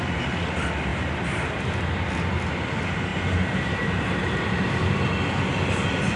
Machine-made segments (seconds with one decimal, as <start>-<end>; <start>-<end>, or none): 0.9-2.1; 3.1-4.9